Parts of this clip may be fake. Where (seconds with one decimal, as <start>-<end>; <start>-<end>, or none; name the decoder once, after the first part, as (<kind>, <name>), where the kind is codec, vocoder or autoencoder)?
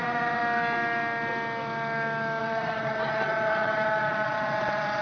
0.0-0.4 (vocoder, WaveNeXt); 2.4-5.0